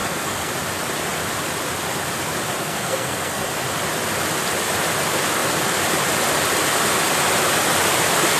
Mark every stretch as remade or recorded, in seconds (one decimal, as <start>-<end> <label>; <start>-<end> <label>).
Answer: 0.0-0.5 remade; 0.5-2.6 recorded; 2.6-3.5 remade; 3.5-8.4 recorded